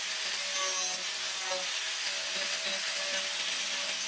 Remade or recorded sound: recorded